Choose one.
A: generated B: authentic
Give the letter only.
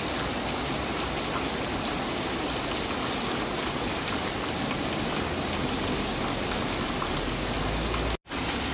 B